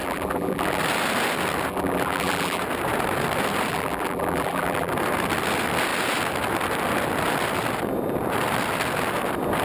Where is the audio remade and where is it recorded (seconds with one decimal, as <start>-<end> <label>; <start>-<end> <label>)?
0.0-0.8 remade; 0.8-1.7 recorded; 1.7-2.6 remade; 2.6-3.7 recorded; 3.7-4.9 remade; 4.9-9.6 recorded